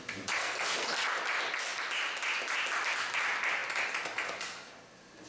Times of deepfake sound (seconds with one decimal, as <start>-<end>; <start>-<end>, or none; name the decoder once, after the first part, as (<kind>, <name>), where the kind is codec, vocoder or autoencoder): 0.4-0.9 (codec, SNAC)